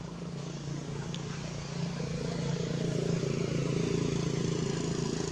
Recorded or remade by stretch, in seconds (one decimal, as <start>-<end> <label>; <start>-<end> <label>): 0.0-3.2 remade; 3.2-5.3 recorded